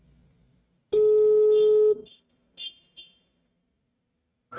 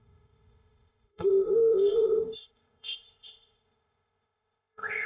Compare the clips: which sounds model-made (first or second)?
second